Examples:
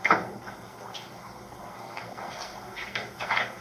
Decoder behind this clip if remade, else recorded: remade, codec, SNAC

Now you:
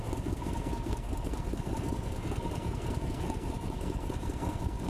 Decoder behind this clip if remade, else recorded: remade, codec, SNAC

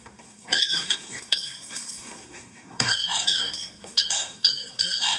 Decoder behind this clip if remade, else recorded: remade, codec, SNAC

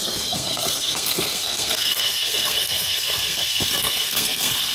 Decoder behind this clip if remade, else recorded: remade, codec, SNAC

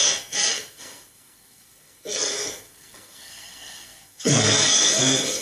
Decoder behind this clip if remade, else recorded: remade, codec, SNAC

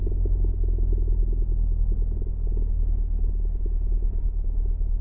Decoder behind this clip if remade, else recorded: recorded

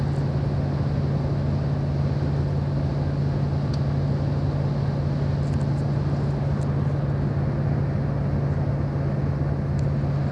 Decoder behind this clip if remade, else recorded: recorded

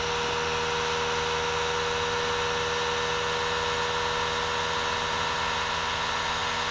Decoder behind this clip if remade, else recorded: recorded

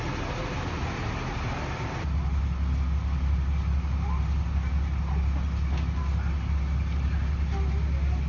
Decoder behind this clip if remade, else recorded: recorded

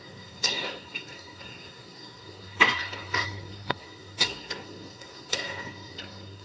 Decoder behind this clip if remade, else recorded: remade, codec, SNAC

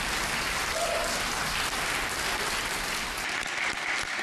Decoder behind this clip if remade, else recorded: recorded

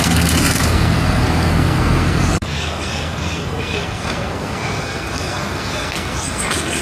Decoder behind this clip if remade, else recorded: remade, codec, SNAC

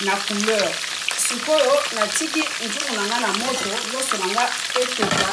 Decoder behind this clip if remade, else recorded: recorded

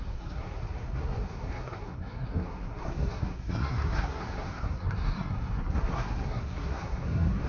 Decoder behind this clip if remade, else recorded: remade, codec, SNAC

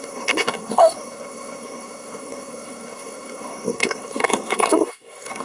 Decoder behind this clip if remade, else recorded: remade, codec, SNAC